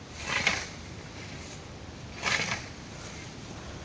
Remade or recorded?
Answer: recorded